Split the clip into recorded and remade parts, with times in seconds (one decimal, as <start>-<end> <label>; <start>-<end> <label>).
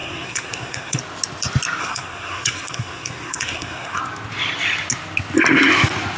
0.0-1.0 remade; 1.0-1.8 recorded; 1.8-4.0 remade; 4.0-6.2 recorded